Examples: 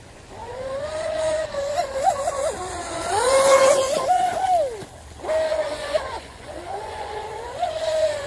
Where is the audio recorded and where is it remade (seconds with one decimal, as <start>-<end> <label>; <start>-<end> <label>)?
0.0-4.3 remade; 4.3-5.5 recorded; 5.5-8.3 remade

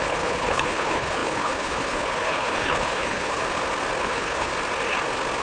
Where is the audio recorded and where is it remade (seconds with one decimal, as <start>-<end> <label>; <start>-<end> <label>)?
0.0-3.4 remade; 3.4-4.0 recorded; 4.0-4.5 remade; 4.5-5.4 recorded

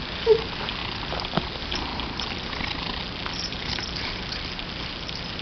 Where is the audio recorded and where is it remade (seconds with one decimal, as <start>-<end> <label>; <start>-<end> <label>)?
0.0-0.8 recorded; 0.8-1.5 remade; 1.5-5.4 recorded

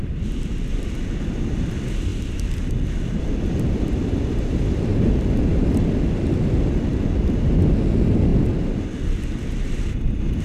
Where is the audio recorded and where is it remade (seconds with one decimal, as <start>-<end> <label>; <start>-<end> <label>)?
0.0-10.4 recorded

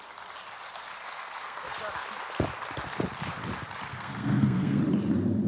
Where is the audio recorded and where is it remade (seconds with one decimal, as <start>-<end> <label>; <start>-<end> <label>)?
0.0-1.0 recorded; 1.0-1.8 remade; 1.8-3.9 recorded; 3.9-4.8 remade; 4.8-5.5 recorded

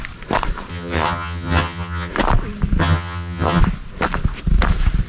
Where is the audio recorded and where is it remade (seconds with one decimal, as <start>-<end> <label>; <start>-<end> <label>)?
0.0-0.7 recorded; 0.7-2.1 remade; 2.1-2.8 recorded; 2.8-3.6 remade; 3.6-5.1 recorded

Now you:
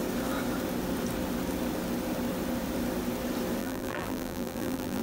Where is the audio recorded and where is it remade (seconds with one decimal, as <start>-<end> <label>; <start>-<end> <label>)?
0.0-3.6 recorded; 3.6-5.0 remade